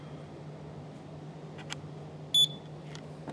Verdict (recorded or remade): recorded